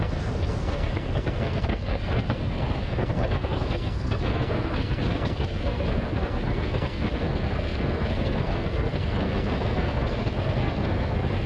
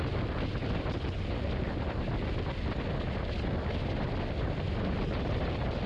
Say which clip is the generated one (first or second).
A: first